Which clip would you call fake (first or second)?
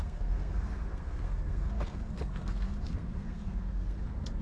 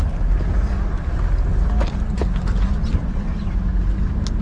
first